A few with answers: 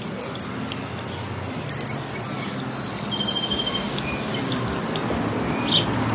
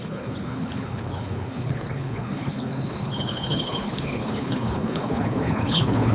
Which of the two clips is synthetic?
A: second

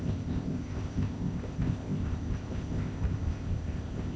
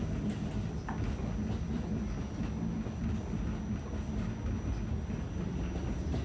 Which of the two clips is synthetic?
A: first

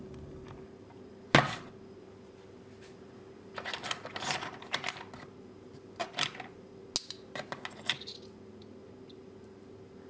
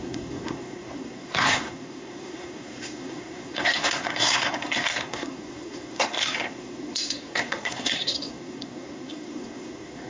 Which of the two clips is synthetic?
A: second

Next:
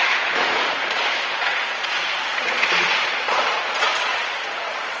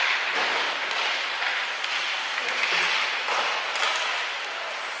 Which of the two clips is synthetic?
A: first